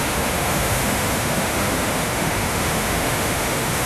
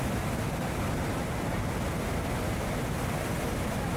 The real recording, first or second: second